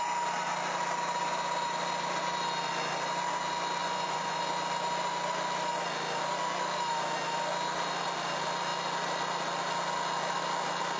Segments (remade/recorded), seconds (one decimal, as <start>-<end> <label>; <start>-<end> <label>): 0.0-3.8 recorded; 3.8-4.4 remade; 4.4-11.0 recorded